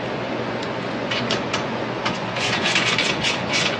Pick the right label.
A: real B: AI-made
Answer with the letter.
B